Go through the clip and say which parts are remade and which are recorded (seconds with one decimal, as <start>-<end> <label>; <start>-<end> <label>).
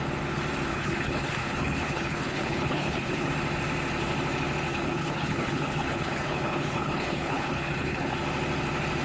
0.0-0.7 recorded; 0.7-3.3 remade; 3.3-4.7 recorded; 4.7-8.2 remade; 8.2-9.0 recorded